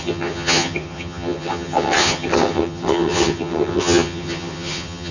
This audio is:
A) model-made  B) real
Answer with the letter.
A